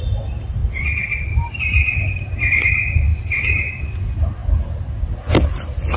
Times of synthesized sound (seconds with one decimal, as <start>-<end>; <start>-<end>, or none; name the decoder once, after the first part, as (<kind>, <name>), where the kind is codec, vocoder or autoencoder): 3.1-3.7 (vocoder, BigVGAN v2)